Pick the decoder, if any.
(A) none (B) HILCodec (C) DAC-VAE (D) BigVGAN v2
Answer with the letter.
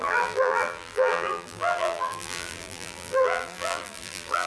D